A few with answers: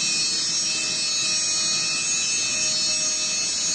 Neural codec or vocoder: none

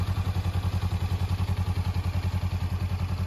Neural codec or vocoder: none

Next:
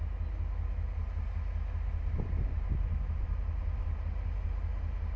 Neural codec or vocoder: none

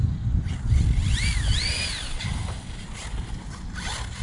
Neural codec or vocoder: none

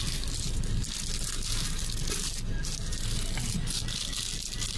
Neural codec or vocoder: none